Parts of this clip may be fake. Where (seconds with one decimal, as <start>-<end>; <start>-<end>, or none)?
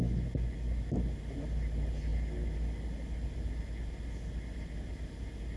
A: none